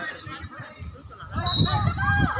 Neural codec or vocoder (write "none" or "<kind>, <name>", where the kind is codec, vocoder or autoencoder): none